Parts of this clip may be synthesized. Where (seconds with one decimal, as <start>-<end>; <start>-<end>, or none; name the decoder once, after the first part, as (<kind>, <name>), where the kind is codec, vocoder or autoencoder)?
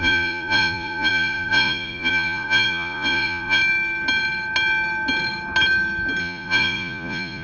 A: 0.0-3.6 (vocoder, Vocos); 6.2-7.4